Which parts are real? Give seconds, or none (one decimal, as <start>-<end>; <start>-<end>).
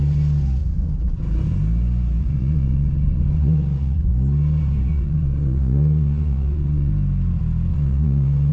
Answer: 0.0-0.6; 1.2-2.2; 4.1-4.9; 6.9-7.7